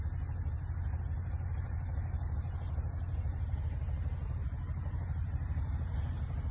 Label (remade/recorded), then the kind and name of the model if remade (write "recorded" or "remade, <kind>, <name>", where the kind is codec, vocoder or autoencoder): recorded